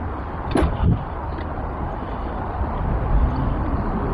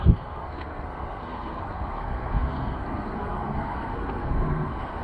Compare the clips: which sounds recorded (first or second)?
first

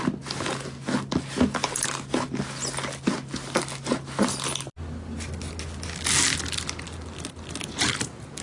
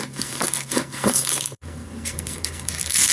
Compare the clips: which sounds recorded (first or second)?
first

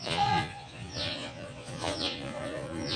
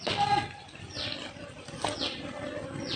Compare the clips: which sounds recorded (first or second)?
second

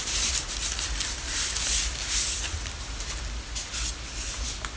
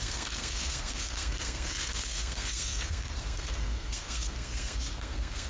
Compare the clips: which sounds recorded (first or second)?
first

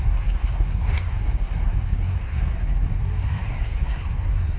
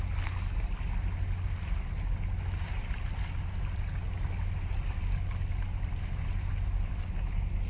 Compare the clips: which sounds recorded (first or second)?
second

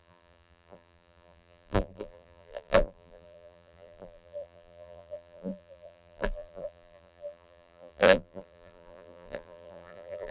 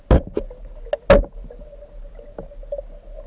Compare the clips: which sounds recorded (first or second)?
second